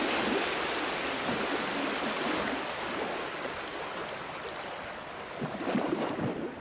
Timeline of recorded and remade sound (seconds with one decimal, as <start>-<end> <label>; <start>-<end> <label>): 0.0-6.6 recorded